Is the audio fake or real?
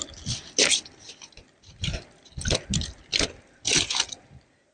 real